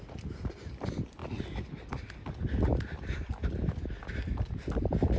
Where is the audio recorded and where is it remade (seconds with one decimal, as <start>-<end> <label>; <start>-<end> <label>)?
0.0-5.2 recorded